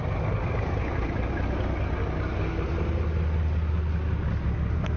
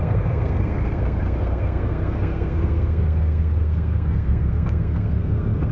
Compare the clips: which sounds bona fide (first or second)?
first